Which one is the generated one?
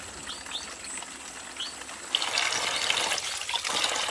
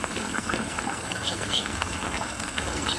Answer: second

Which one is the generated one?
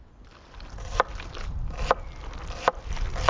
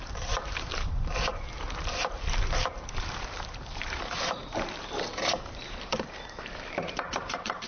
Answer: second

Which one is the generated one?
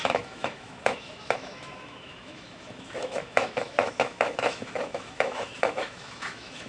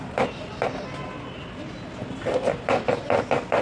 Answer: first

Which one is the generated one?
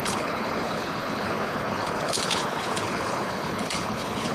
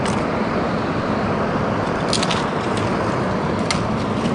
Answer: first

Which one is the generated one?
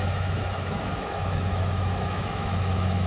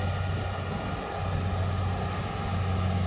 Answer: first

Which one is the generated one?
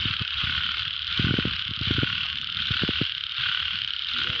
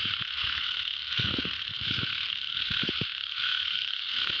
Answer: second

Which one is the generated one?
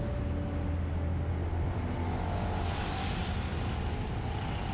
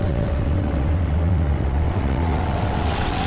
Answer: second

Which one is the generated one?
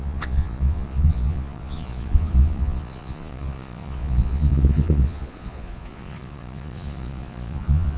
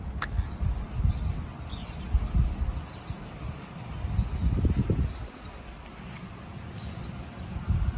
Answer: first